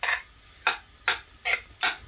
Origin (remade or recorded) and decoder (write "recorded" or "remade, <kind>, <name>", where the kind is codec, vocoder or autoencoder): recorded